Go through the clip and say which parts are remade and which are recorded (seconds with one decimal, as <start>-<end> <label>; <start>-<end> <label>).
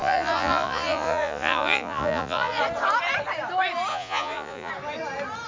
0.0-2.6 remade; 2.6-3.9 recorded; 3.9-4.7 remade; 4.7-5.5 recorded